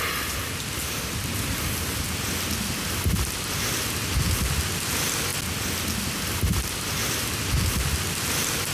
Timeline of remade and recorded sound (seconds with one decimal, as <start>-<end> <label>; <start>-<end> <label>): 0.0-8.7 recorded

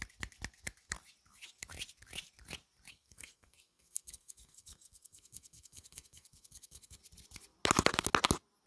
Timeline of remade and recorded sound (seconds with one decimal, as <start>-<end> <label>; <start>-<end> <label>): 0.0-2.9 recorded; 2.9-7.0 remade; 7.0-8.7 recorded

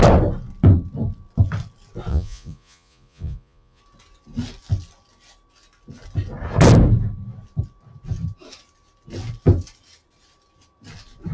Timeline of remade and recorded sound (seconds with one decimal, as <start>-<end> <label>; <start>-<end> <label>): 0.0-2.1 recorded; 2.1-3.8 remade; 3.8-11.3 recorded